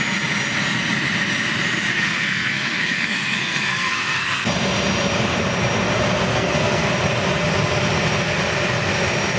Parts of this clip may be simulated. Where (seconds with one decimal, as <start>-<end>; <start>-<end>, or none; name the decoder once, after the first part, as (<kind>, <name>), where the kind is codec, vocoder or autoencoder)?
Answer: 1.9-4.5 (codec, SNAC); 6.3-6.9